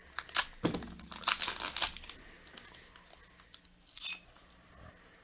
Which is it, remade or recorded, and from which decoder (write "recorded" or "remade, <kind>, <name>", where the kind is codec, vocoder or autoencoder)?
recorded